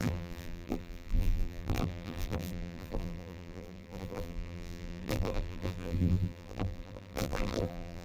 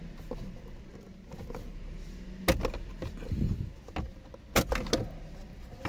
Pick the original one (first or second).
second